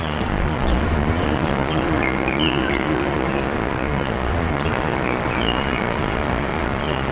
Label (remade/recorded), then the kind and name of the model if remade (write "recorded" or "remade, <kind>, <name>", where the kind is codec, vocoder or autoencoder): remade, vocoder, Vocos